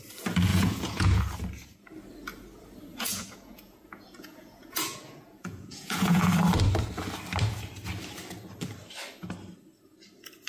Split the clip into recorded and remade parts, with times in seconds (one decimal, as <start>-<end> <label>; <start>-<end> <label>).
0.0-0.5 recorded; 0.5-1.2 remade; 1.2-3.1 recorded; 3.1-6.3 remade; 6.3-10.5 recorded